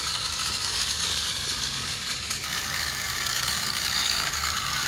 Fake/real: fake